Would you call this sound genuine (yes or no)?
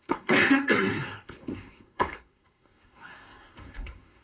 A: no